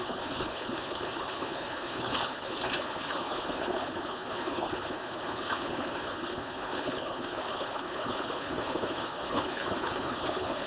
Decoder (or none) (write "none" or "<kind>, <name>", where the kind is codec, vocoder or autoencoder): codec, HILCodec